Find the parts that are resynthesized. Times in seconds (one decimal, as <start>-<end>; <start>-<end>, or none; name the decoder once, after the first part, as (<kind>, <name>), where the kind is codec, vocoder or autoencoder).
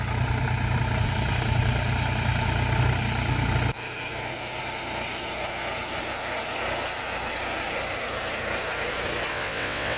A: 9.3-10.0 (vocoder, WaveNeXt)